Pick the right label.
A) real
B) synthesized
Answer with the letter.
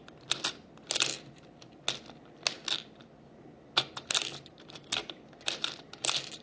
A